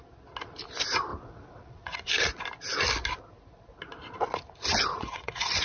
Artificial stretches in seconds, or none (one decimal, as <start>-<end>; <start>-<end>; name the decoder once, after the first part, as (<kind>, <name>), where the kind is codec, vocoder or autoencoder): 1.1-2.1 (vocoder, WaveNeXt); 4.9-5.6